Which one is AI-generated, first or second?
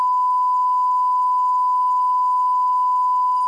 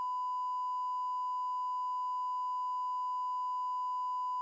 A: first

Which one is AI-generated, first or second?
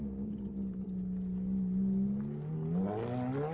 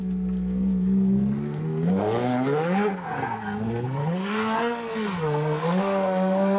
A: second